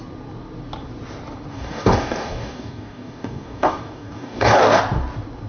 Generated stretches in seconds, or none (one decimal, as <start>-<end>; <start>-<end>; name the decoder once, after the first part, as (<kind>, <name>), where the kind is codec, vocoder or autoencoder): 1.5-4.8 (codec, DAC)